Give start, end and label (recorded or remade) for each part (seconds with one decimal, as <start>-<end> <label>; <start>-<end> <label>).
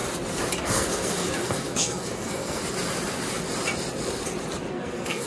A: 0.0-0.6 recorded; 0.6-2.6 remade; 2.6-4.7 recorded; 4.7-5.3 remade